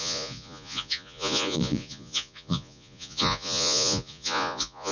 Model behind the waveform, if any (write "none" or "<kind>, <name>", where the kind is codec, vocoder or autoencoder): vocoder, Vocos